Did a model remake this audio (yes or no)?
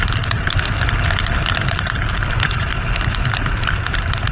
no